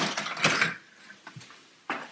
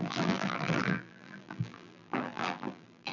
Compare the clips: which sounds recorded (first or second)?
first